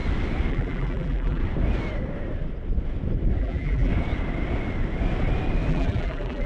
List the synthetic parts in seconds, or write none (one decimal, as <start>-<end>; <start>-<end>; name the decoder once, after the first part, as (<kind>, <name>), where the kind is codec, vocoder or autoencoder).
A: 0.5-1.4 (vocoder, BigVGAN v2); 3.4-3.9; 5.7-6.5